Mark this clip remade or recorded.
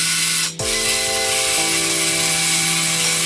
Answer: recorded